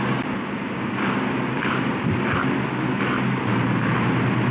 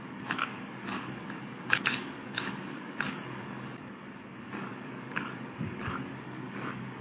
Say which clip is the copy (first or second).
second